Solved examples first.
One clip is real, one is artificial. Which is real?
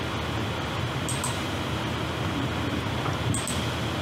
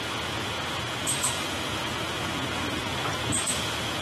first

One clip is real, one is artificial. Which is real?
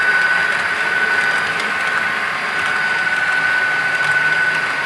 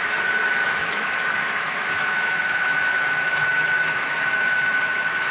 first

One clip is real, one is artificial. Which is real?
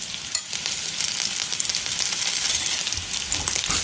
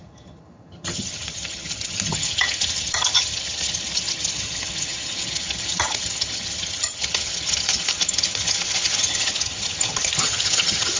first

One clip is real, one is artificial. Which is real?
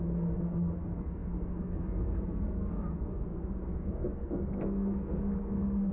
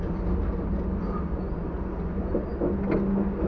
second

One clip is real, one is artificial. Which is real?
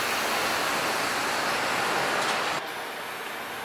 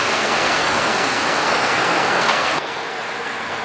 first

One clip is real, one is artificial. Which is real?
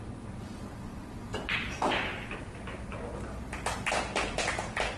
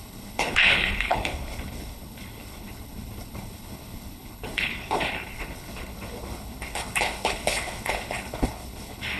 first